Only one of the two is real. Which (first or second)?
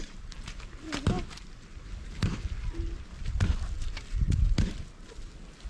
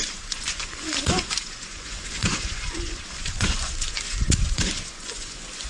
first